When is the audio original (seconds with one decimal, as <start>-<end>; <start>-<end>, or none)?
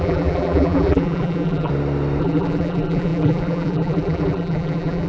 1.7-2.2